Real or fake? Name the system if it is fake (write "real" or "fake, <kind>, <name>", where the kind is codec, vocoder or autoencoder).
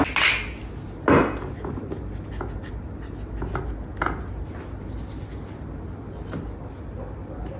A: real